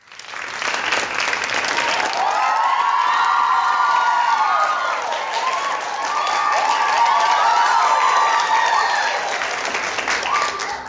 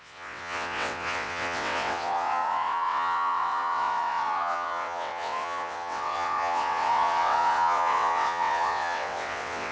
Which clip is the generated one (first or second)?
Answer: second